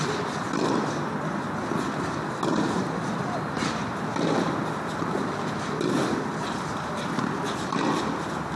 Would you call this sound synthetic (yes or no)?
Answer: no